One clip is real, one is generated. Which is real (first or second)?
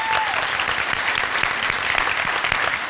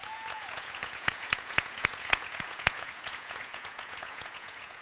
first